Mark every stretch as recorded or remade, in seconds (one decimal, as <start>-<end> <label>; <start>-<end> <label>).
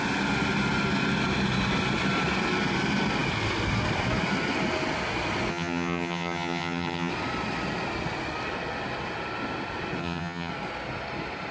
0.0-5.5 recorded; 5.5-7.1 remade; 7.1-10.0 recorded; 10.0-10.5 remade; 10.5-11.5 recorded